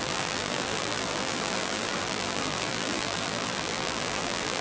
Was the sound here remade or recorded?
remade